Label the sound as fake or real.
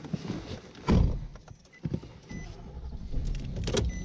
real